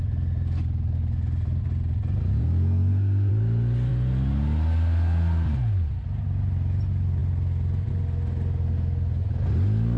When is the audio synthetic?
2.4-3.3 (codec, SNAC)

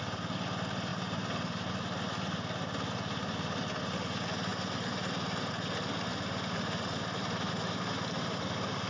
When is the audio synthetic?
none

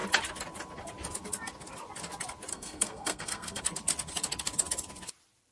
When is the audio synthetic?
2.5-3.6 (codec, SNAC)